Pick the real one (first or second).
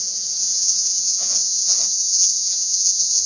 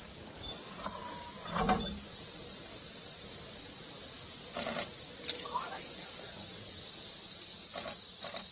second